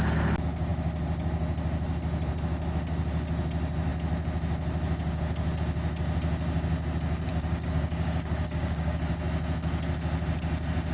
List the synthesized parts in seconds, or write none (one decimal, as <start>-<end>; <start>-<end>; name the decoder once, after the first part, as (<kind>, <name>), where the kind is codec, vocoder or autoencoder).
7.3-9.1 (codec, DAC)

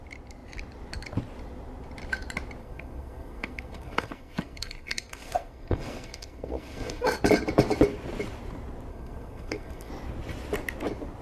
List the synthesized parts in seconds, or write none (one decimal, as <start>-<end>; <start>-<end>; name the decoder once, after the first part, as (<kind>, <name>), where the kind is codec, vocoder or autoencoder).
2.6-7.2 (codec, SNAC); 8.9-9.9

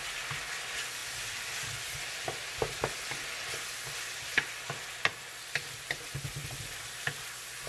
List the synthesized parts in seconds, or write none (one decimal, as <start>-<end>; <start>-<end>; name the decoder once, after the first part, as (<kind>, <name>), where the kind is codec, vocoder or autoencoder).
none

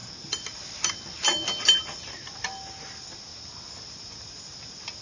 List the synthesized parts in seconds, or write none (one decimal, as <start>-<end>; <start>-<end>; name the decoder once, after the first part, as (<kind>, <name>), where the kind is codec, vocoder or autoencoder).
none

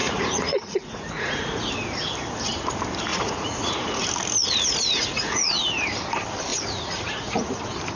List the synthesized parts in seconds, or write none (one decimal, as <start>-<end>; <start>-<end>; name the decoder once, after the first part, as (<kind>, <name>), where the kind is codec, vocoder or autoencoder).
0.0-1.7 (vocoder, Vocos); 3.1-4.0; 4.4-5.5; 6.5-7.6

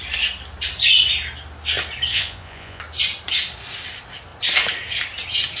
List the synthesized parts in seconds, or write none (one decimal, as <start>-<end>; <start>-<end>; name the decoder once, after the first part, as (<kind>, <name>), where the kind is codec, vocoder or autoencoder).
2.1-2.8 (vocoder, Vocos)